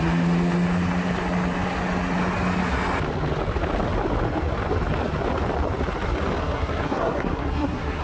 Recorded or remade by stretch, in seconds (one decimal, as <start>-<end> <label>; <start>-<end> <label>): 0.0-6.4 recorded; 6.4-8.0 remade